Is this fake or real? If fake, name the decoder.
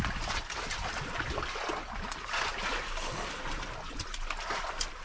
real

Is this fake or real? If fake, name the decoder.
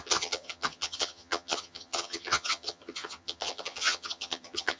fake, vocoder, HiFi-GAN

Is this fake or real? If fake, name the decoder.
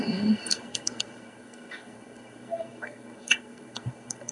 fake, codec, SNAC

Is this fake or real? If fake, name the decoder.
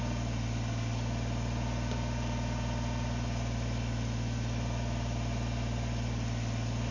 real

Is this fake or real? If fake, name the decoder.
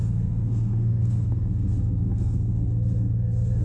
fake, codec, SNAC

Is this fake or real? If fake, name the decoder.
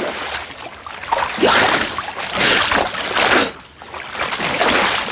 real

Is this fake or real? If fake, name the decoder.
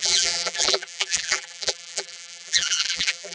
fake, vocoder, BigVGAN v2